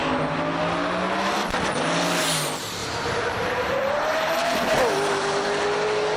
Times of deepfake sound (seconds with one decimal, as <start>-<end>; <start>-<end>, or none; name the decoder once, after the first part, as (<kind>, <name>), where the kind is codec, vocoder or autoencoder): 2.8-4.7 (vocoder, BigVGAN v2)